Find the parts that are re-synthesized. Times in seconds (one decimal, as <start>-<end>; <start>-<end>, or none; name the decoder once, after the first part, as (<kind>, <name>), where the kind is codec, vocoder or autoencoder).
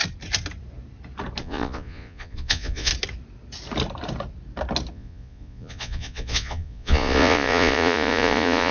1.4-2.9 (vocoder, Vocos); 4.9-8.7